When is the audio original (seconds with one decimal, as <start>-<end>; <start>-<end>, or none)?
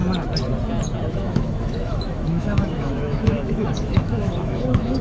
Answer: 0.0-1.1